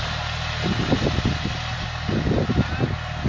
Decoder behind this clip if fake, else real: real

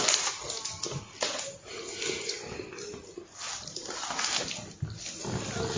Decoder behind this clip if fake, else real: real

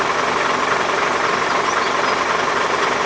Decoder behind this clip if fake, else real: real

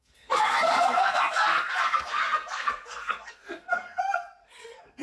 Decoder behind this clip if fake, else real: fake, codec, SNAC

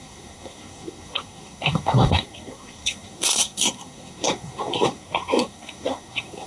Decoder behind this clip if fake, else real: fake, codec, SNAC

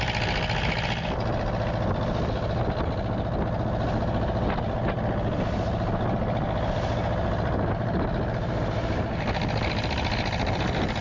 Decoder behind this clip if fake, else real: real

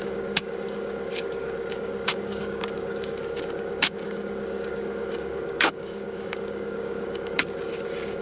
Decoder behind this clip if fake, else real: fake, codec, DAC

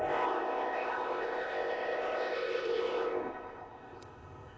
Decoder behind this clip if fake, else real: fake, codec, ZipCodec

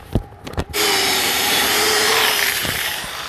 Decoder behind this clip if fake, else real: fake, vocoder, BigVGAN v2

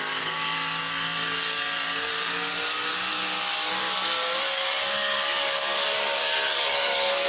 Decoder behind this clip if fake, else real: fake, codec, DAC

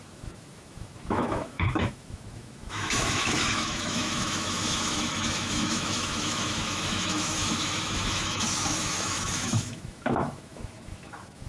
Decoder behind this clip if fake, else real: fake, autoencoder, DAC-VAE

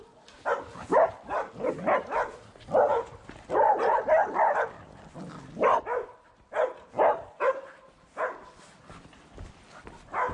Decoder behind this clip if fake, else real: real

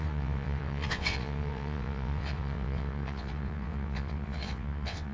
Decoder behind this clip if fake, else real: fake, vocoder, WaveNeXt